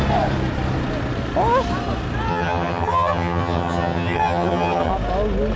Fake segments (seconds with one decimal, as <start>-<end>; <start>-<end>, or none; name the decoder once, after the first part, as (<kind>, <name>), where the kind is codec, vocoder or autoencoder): 2.3-4.9 (vocoder, HiFi-GAN)